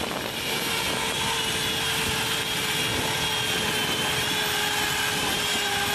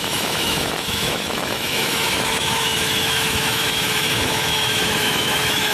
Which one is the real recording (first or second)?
first